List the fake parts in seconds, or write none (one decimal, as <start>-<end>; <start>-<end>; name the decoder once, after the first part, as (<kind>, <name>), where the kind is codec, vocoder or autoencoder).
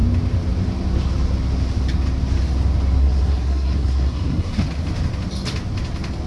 3.0-4.6 (codec, SNAC)